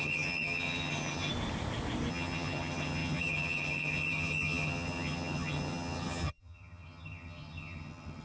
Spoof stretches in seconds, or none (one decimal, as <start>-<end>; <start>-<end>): 0.0-1.3; 2.1-8.2